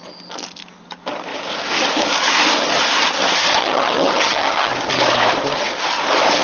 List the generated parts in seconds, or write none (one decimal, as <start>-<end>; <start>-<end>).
3.6-4.7